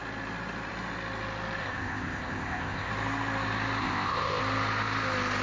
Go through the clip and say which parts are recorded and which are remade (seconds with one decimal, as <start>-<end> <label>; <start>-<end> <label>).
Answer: 0.0-1.6 recorded; 1.6-2.9 remade; 2.9-3.8 recorded; 3.8-4.4 remade; 4.4-5.4 recorded